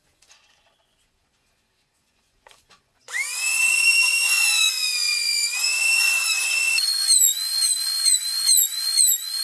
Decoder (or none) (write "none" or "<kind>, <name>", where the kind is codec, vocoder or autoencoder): vocoder, Vocos